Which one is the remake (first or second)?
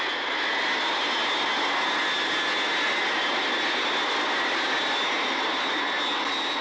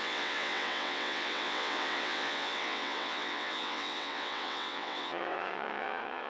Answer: second